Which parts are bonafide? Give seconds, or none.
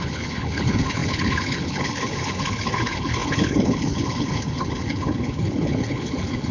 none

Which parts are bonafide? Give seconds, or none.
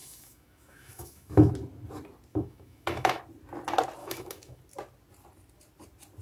1.5-2.3; 3.2-4.0; 4.6-6.2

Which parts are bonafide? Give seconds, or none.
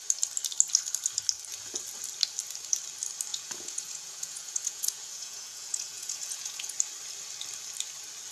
0.0-3.3; 6.7-8.3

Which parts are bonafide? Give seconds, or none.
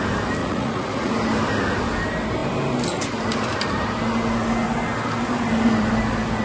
0.0-0.4; 1.1-6.4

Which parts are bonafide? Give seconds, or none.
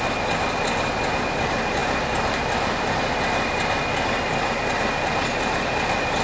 0.0-6.2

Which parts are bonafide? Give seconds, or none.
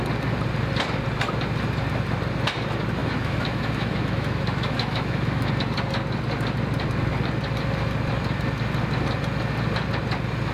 0.0-3.0; 5.5-10.5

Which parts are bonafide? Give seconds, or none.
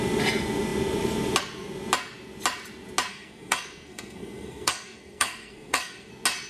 0.0-3.1; 6.1-6.5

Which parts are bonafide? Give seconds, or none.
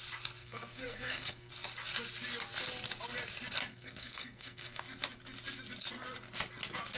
0.0-0.4; 1.5-3.7; 4.8-7.0